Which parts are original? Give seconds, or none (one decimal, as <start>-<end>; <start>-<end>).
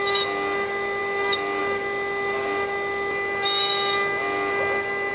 0.0-5.1